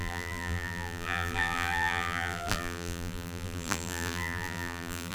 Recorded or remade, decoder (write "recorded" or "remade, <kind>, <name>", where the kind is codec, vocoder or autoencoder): remade, vocoder, BigVGAN v2